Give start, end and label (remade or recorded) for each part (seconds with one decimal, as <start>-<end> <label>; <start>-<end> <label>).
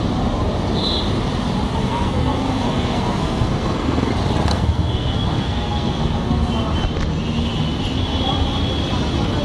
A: 0.0-1.8 recorded; 1.8-4.1 remade; 4.1-4.5 recorded; 4.5-6.5 remade; 6.5-9.4 recorded